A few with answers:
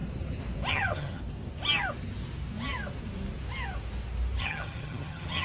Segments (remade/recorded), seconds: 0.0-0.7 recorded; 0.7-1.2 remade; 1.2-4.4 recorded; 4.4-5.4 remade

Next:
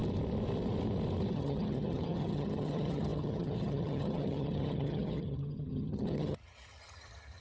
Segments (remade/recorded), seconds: 0.0-1.3 recorded; 1.3-7.4 remade

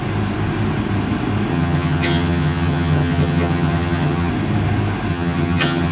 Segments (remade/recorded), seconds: 0.0-1.5 recorded; 1.5-4.3 remade; 4.3-5.1 recorded; 5.1-5.9 remade

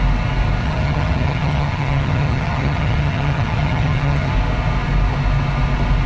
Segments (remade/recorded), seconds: 0.0-0.6 recorded; 0.6-4.3 remade; 4.3-6.1 recorded

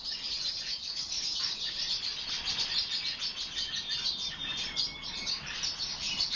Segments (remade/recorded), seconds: 0.0-6.4 recorded